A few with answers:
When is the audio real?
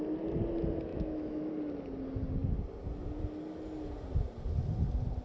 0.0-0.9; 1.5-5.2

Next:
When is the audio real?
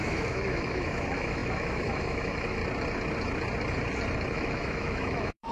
2.6-4.3